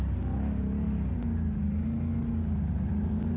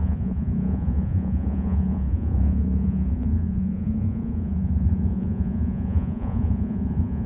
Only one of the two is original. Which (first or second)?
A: first